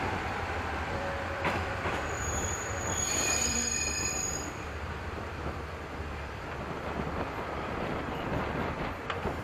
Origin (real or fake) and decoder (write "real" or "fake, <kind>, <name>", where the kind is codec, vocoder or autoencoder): fake, vocoder, BigVGAN v2